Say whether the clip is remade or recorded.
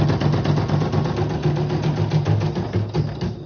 recorded